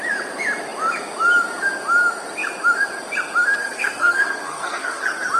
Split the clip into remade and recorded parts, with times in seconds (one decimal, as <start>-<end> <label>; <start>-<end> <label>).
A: 0.0-3.6 recorded; 3.6-5.0 remade; 5.0-5.4 recorded